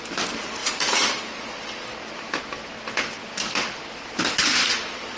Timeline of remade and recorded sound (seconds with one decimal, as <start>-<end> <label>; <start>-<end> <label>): 0.0-5.2 recorded